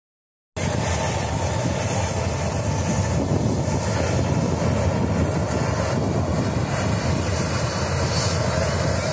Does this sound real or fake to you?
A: real